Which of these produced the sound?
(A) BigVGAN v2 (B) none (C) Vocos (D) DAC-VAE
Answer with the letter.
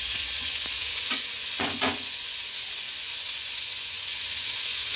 C